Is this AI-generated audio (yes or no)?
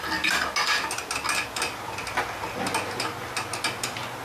no